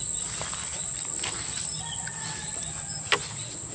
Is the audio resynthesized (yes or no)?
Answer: no